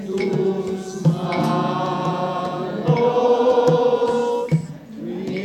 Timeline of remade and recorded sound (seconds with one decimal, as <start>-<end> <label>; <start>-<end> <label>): 0.0-4.2 remade; 4.2-4.7 recorded; 4.7-5.4 remade